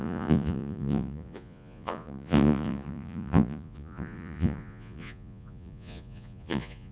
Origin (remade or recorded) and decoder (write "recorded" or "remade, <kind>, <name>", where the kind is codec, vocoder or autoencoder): remade, vocoder, Vocos